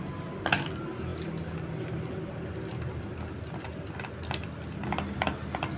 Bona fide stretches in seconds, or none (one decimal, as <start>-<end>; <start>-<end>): 0.0-5.8